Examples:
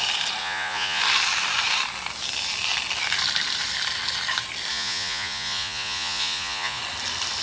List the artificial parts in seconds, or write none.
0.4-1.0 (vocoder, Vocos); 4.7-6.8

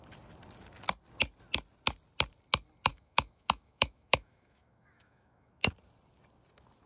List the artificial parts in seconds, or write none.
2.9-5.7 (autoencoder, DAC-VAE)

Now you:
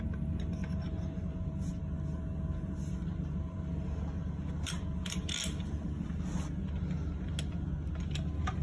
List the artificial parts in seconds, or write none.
none

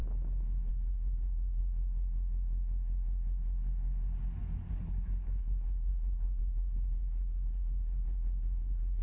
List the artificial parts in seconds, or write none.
0.7-1.6 (codec, HILCodec); 4.7-9.0

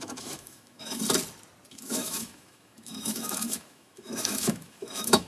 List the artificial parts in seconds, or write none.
0.0-1.0 (autoencoder, DAC-VAE); 1.7-5.3

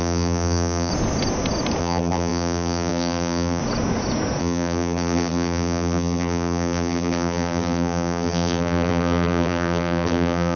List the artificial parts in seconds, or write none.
0.0-0.9 (vocoder, BigVGAN v2); 1.8-3.6; 4.4-10.6

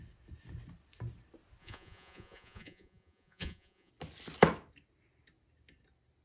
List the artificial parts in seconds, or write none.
1.6-3.9 (vocoder, Vocos)